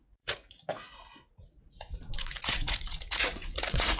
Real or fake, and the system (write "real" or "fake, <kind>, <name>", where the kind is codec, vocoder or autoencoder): fake, vocoder, Vocos